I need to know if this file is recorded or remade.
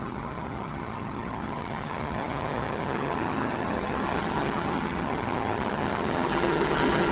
remade